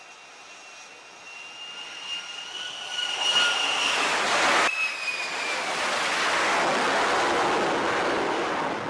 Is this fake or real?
real